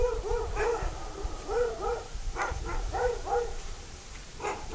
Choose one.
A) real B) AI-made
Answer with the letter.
B